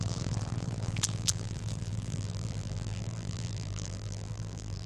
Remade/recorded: remade